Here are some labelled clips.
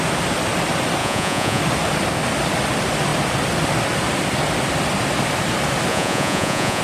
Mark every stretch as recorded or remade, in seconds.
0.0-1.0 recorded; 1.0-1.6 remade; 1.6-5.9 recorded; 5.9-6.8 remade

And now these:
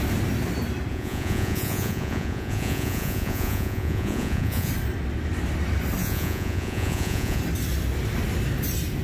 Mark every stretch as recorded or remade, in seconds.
0.0-0.9 recorded; 0.9-4.7 remade; 4.7-6.0 recorded; 6.0-7.4 remade; 7.4-9.0 recorded

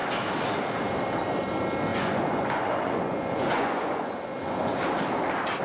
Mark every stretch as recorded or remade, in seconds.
0.0-1.9 recorded; 1.9-4.8 remade; 4.8-5.6 recorded

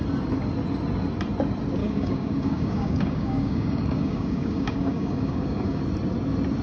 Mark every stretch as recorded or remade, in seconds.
0.0-1.8 recorded; 1.8-5.8 remade; 5.8-6.6 recorded

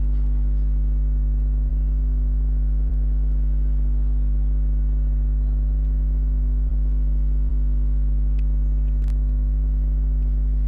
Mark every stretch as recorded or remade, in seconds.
0.0-10.7 recorded

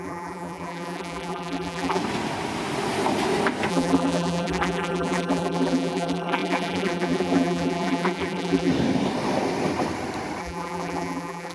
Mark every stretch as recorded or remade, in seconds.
0.0-2.0 remade; 2.0-3.7 recorded; 3.7-8.7 remade; 8.7-10.4 recorded; 10.4-11.5 remade

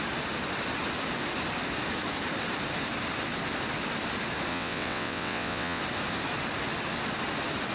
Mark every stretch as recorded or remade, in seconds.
0.0-4.5 recorded; 4.5-5.8 remade; 5.8-7.7 recorded

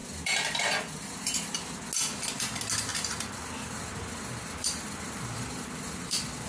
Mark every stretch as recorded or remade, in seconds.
0.0-1.6 remade; 1.6-2.9 recorded; 2.9-6.5 remade